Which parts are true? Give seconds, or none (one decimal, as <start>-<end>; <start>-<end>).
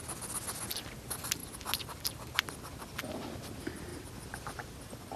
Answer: 0.0-5.2